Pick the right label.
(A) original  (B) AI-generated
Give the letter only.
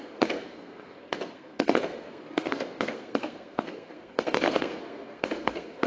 B